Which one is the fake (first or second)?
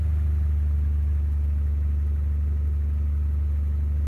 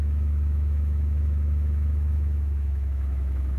second